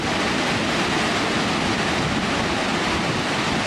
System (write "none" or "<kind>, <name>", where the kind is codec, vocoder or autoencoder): none